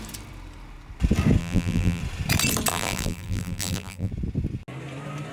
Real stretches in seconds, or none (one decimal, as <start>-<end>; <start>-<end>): 0.0-1.4; 2.0-2.7; 4.1-5.3